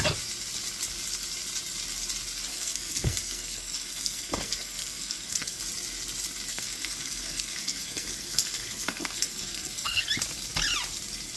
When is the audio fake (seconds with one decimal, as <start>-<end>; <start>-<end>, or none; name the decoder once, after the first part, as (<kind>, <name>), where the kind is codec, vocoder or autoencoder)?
2.5-5.6 (codec, SNAC); 6.5-10.1